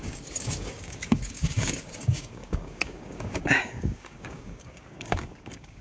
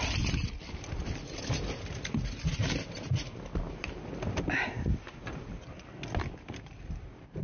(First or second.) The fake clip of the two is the first